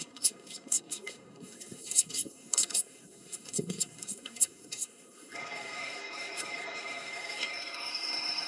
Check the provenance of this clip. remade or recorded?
remade